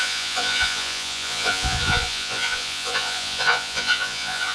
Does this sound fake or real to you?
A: fake